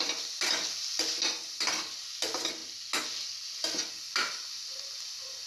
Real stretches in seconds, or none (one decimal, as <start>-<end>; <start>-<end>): 0.0-5.5